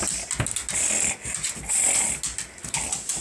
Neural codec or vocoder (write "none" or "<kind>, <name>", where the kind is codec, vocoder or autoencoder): none